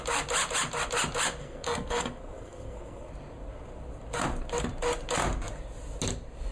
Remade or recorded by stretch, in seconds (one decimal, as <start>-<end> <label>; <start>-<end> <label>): 0.0-1.4 recorded; 1.4-3.1 remade; 3.1-6.5 recorded